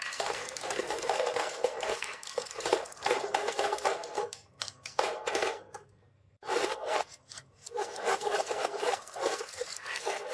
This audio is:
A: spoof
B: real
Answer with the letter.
A